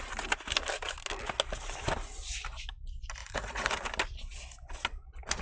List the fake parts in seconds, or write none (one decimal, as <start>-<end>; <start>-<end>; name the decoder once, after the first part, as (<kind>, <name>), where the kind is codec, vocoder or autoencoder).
3.2-3.7 (vocoder, Vocos)